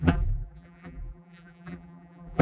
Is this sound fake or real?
fake